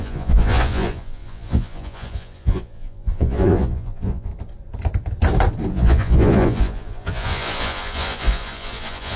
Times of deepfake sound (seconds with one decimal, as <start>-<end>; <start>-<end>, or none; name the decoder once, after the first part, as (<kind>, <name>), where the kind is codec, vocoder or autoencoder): 0.0-4.3 (vocoder, Vocos); 5.7-9.2